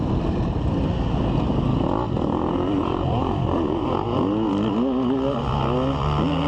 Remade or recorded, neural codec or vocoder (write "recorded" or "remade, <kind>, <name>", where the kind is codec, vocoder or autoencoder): recorded